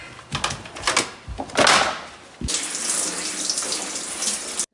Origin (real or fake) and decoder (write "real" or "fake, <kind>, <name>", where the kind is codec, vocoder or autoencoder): real